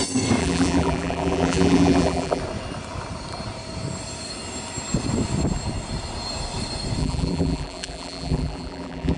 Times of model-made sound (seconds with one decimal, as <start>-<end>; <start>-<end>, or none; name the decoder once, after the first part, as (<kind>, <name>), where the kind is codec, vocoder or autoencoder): 0.4-2.4 (vocoder, BigVGAN v2); 7.0-9.2